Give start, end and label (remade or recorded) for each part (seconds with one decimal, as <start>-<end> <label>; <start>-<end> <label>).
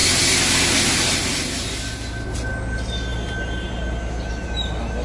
0.0-5.0 recorded